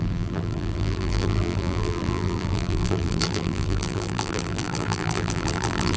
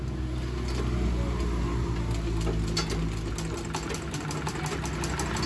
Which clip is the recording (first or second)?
second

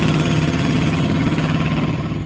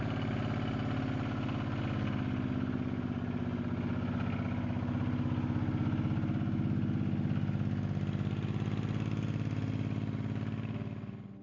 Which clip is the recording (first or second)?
second